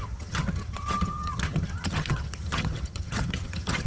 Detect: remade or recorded remade